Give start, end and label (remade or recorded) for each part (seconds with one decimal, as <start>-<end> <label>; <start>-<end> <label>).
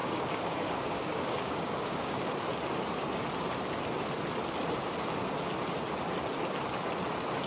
0.0-2.3 remade; 2.3-7.5 recorded